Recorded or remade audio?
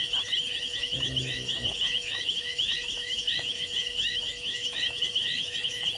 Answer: remade